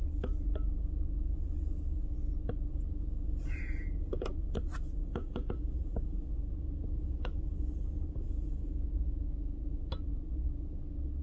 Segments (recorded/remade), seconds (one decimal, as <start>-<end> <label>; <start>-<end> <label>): 0.0-2.7 recorded; 2.7-4.3 remade; 4.3-5.0 recorded; 5.0-8.7 remade; 8.7-11.2 recorded